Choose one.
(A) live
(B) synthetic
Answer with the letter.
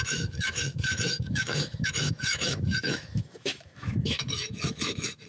B